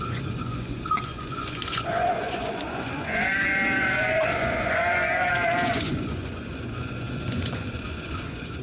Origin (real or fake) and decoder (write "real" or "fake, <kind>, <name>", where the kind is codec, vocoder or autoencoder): fake, vocoder, Vocos